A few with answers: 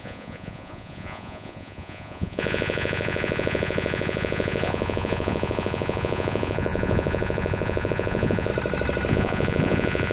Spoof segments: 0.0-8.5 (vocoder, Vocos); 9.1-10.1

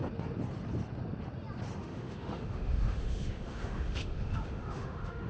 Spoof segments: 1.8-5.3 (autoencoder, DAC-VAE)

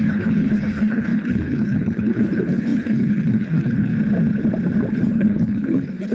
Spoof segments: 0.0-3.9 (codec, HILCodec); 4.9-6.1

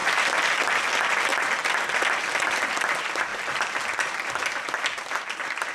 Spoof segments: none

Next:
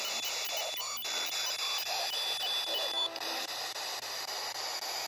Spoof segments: none

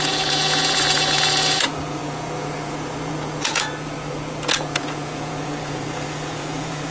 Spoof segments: 0.0-6.9 (vocoder, Vocos)